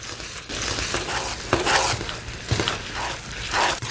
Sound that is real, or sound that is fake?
real